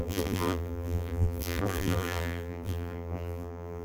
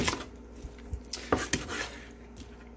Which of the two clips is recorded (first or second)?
second